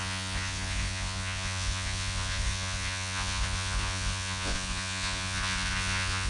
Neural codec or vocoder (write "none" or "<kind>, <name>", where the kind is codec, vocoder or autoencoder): vocoder, Vocos